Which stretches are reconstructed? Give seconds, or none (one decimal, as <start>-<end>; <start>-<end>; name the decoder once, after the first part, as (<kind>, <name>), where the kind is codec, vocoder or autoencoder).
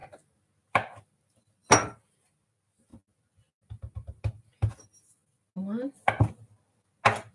none